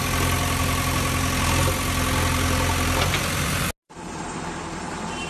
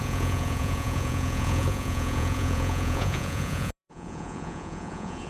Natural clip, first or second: first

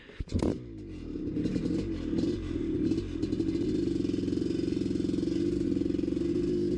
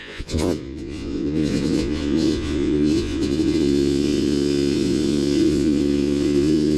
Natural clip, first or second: first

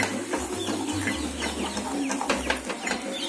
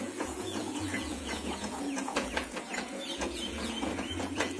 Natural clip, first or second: first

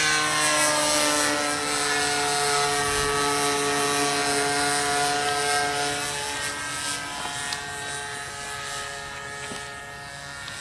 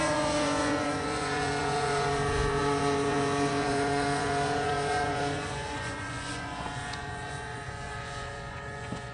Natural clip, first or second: first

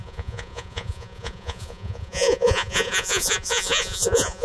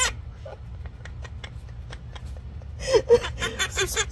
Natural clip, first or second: second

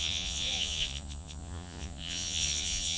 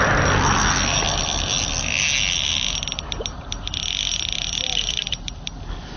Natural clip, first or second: second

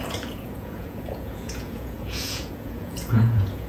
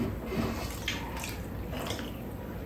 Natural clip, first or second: second